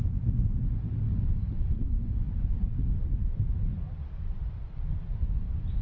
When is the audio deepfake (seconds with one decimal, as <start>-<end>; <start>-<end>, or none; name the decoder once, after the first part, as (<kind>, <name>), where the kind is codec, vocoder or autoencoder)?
0.0-0.5 (vocoder, BigVGAN v2); 1.7-5.8